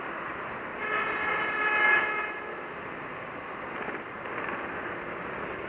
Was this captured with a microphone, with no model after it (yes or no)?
yes